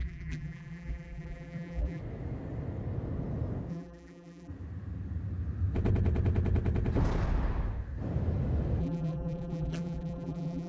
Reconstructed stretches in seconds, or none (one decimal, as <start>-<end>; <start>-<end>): 0.0-2.0; 3.7-4.5; 8.8-10.7